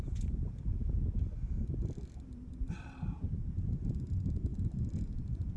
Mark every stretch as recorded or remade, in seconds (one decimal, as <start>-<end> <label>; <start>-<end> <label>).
0.0-5.6 recorded